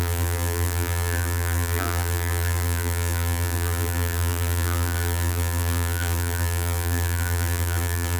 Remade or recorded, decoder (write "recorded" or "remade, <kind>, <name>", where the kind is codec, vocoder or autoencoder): remade, vocoder, BigVGAN v2